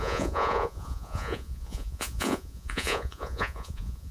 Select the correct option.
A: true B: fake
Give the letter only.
B